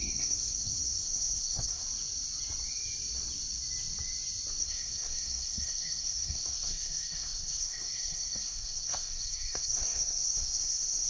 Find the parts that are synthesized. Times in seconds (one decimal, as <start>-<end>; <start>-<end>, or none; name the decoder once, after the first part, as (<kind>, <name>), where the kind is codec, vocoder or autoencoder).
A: 0.0-1.8 (codec, SNAC); 4.6-11.1